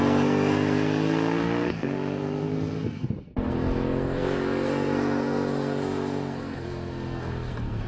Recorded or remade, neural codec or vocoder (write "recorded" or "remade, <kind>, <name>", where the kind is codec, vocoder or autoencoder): remade, codec, SNAC